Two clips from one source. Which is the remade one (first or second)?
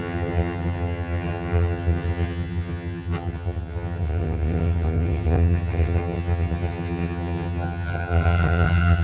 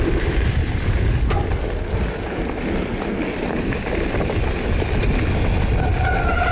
first